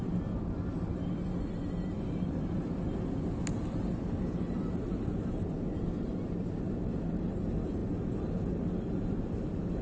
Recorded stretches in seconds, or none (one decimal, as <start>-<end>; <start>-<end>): 0.0-9.8